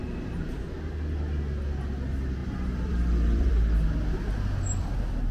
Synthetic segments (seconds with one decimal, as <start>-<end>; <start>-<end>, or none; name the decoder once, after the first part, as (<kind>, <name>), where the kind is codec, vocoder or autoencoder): 0.0-0.5 (vocoder, BigVGAN v2); 2.4-3.5